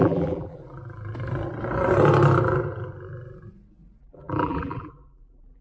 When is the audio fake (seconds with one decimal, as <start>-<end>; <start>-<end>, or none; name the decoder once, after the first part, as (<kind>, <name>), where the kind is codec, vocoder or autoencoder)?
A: 0.0-0.6 (vocoder, BigVGAN v2); 4.0-5.6